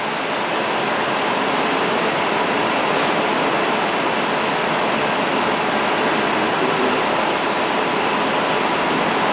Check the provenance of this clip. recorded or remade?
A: recorded